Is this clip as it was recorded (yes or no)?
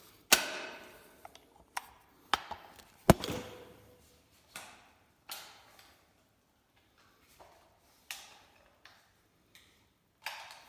yes